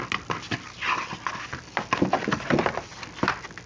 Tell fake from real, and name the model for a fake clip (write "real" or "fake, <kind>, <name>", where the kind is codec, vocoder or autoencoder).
real